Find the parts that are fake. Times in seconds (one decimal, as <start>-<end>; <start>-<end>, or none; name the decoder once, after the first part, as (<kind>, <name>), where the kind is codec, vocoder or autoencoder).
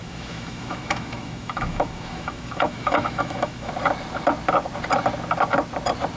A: 0.0-3.7 (autoencoder, DAC-VAE)